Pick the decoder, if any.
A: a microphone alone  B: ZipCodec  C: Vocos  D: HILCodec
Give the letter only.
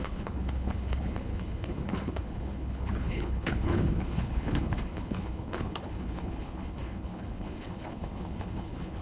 D